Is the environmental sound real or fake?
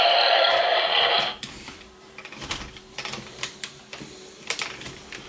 fake